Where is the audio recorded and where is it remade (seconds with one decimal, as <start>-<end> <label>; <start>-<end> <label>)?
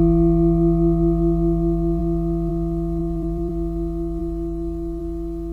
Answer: 0.0-3.0 recorded; 3.0-3.5 remade; 3.5-5.5 recorded